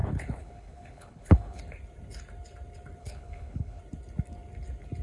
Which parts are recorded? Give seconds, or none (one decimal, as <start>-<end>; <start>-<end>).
1.6-3.0; 3.8-5.0